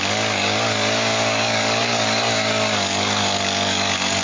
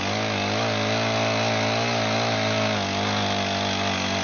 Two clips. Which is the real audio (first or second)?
second